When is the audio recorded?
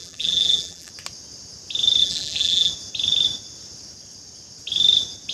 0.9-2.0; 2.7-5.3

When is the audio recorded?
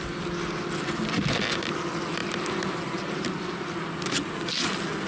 0.0-5.1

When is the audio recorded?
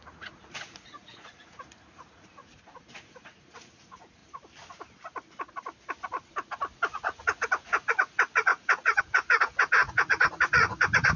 4.2-6.9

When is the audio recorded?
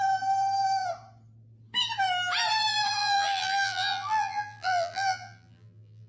0.0-3.0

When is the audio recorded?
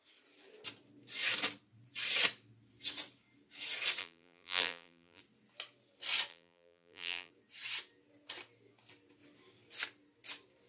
0.0-4.0; 5.2-6.3; 7.3-10.7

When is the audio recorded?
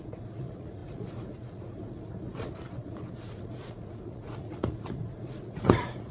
none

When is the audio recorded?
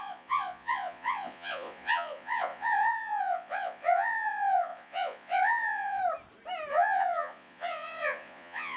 6.0-6.7